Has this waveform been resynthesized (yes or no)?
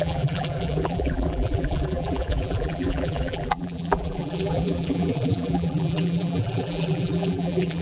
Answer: yes